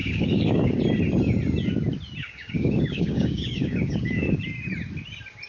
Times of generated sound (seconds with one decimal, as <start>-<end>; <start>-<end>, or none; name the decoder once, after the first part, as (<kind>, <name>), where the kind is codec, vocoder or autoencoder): 0.0-0.8 (codec, DAC); 2.2-4.4